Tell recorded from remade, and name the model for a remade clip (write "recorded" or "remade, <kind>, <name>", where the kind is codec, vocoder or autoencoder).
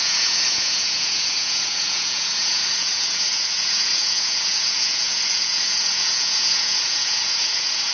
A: remade, vocoder, Vocos